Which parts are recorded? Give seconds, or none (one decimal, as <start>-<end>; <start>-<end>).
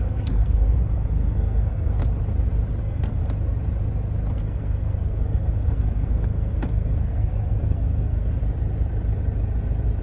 2.0-2.8; 3.2-4.3; 8.4-10.0